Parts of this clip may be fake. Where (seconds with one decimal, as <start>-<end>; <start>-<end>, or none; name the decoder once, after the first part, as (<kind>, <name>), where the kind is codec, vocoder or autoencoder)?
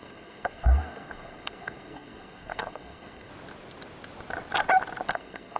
0.0-3.3 (codec, SNAC); 5.1-5.6